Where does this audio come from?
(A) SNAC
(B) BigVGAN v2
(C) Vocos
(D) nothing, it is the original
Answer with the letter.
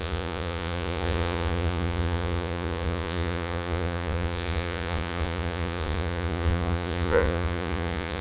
C